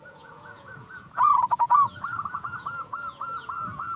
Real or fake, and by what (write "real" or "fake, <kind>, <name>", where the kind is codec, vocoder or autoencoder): fake, vocoder, Vocos